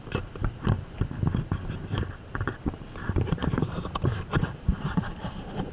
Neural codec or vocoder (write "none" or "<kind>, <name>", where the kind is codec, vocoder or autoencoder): vocoder, BigVGAN v2